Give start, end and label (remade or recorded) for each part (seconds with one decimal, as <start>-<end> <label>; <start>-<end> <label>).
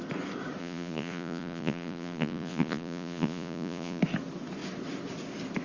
0.0-0.6 recorded; 0.6-4.0 remade; 4.0-5.6 recorded